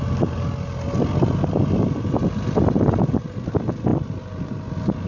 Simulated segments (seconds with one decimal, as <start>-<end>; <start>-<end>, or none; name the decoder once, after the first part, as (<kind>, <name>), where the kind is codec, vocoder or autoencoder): none